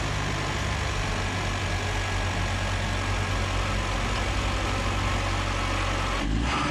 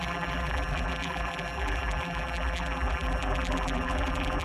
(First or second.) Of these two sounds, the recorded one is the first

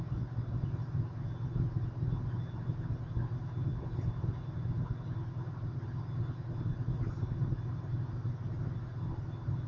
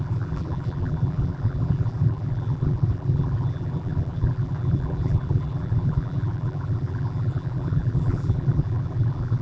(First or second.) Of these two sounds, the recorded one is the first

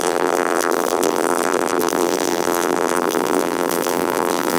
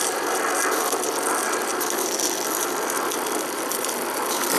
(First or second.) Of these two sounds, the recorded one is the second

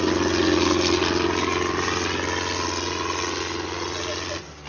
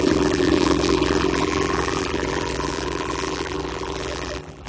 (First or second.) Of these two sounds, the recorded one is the first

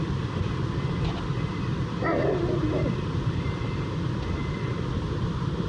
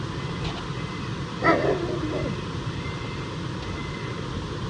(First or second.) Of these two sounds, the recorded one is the second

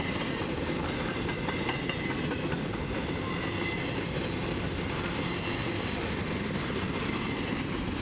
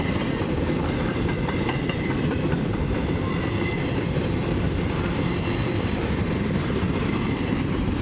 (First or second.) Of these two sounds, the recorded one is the first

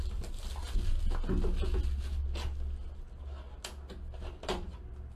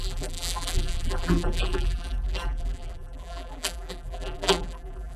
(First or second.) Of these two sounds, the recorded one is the first